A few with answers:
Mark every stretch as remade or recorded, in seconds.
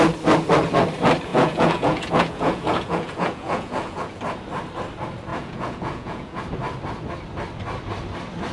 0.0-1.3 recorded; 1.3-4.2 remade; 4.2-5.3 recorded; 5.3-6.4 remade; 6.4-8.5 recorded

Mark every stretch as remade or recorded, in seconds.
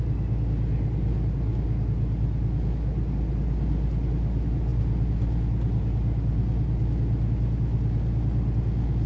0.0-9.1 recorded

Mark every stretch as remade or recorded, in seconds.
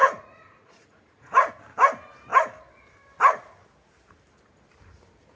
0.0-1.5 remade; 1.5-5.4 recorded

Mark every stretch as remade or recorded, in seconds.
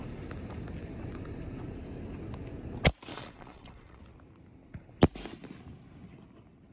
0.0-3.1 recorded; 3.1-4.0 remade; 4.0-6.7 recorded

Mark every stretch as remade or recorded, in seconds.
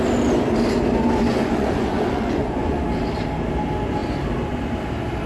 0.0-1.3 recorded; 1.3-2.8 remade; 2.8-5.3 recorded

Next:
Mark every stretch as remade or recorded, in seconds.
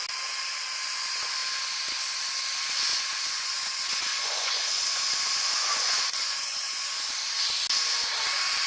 0.0-2.9 recorded; 2.9-7.0 remade; 7.0-8.7 recorded